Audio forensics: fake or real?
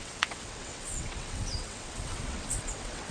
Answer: fake